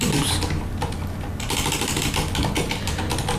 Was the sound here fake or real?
real